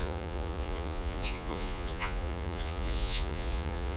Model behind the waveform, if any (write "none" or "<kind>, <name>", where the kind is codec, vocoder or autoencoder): vocoder, Vocos